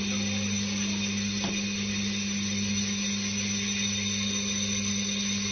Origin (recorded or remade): recorded